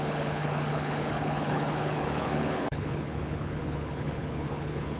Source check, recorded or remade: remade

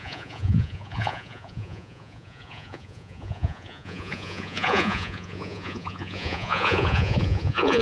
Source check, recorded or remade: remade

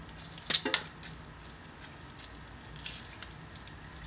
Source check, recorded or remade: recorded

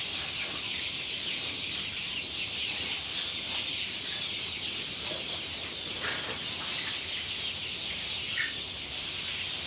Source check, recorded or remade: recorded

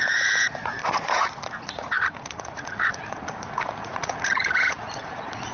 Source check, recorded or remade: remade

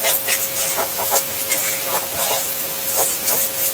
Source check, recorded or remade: recorded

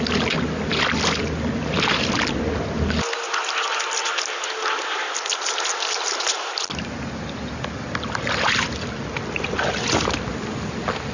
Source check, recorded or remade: recorded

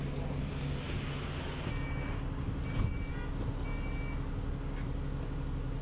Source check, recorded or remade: recorded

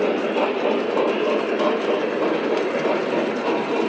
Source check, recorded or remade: recorded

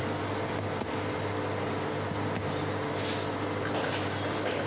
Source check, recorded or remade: recorded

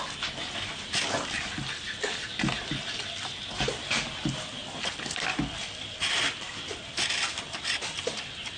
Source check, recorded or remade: recorded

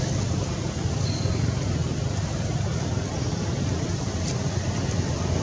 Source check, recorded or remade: recorded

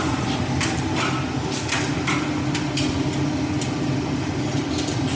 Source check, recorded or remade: recorded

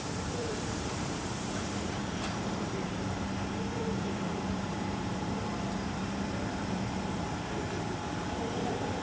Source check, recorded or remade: remade